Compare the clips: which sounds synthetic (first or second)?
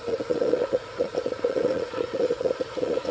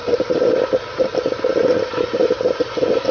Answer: first